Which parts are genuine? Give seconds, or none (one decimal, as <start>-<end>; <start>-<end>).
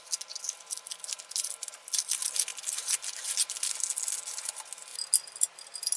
0.0-6.0